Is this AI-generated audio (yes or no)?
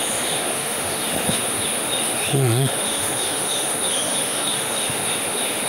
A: yes